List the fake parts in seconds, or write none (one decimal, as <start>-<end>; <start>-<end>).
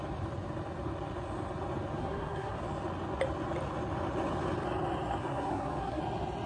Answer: 2.0-2.6; 5.2-6.0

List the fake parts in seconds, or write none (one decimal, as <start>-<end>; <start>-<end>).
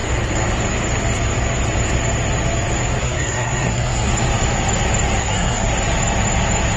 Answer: 3.0-4.1; 5.2-5.7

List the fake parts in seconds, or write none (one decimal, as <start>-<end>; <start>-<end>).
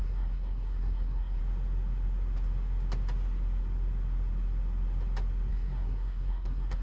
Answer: 0.0-1.4; 5.5-6.8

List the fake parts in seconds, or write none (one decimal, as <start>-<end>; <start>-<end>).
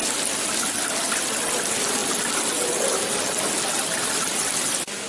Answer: none